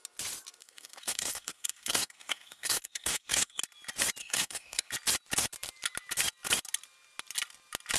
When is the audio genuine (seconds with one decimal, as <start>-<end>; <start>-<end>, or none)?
0.0-0.6; 3.6-4.2; 4.9-8.0